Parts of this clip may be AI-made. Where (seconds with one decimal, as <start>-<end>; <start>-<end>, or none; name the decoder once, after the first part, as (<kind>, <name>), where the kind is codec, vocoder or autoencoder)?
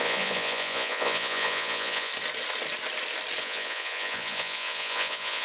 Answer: 0.0-2.1 (vocoder, Vocos); 3.4-5.4